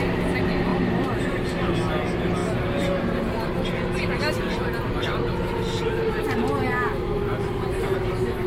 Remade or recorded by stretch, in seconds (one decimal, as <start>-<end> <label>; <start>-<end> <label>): 0.0-0.7 recorded; 0.7-1.7 remade; 1.7-8.5 recorded